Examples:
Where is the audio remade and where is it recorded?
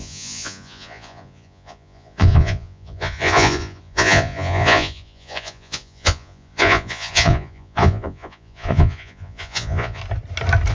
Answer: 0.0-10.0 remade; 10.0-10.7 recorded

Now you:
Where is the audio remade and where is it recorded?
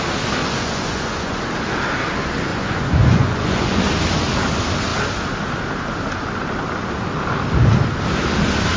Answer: 0.0-0.4 recorded; 0.4-1.4 remade; 1.4-2.5 recorded; 2.5-3.8 remade; 3.8-8.8 recorded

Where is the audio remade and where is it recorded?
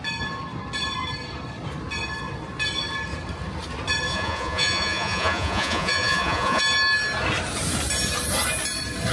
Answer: 0.0-4.1 recorded; 4.1-6.6 remade; 6.6-9.1 recorded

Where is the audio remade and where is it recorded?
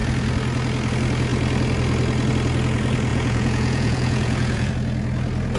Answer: 0.0-3.1 recorded; 3.1-4.7 remade; 4.7-5.6 recorded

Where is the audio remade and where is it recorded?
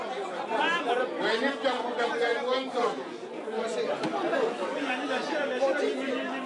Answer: 0.0-6.5 recorded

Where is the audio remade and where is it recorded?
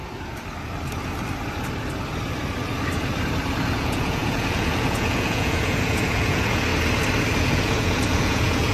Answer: 0.0-3.7 recorded; 3.7-6.7 remade; 6.7-7.4 recorded; 7.4-8.7 remade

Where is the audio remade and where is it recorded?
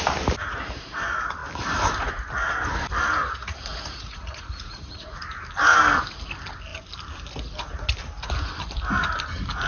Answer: 0.0-3.2 recorded; 3.2-5.2 remade; 5.2-9.7 recorded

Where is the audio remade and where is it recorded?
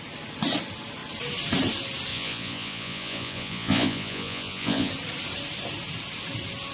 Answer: 0.0-2.1 recorded; 2.1-4.9 remade; 4.9-6.7 recorded